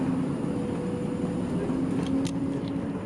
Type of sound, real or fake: real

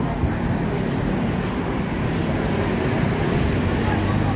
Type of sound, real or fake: fake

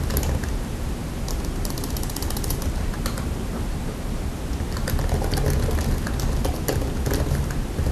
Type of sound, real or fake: real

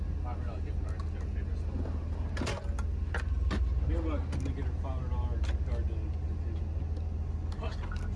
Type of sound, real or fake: real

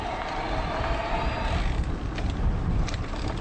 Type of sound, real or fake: real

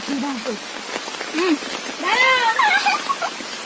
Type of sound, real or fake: real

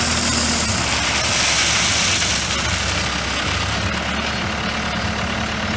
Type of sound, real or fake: real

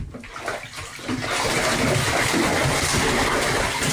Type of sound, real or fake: real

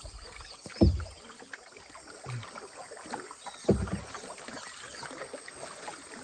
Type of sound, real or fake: real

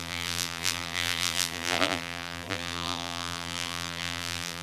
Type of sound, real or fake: fake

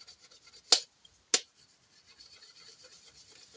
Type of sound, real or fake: real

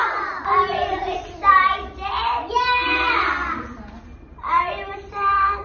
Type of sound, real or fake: fake